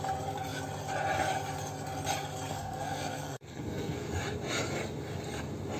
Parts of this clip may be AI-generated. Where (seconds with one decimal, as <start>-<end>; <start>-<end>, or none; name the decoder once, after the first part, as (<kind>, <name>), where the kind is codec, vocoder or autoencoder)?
2.5-4.1 (codec, SNAC)